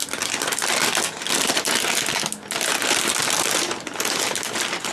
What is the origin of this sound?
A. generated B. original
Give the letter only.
B